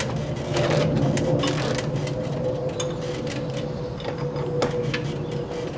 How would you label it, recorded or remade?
recorded